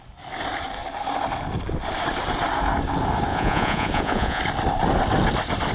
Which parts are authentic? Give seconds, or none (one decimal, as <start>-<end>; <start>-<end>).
0.0-3.3; 4.4-5.7